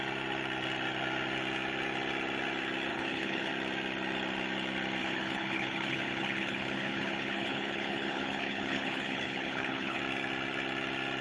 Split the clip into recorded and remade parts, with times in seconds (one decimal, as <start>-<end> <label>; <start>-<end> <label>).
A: 0.0-2.9 recorded; 2.9-3.5 remade; 3.5-5.0 recorded; 5.0-10.0 remade; 10.0-11.2 recorded